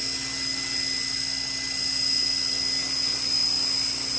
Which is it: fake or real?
real